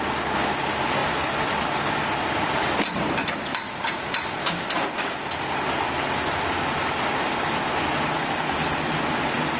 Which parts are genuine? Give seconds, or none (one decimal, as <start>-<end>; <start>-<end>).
0.0-3.5; 5.4-9.6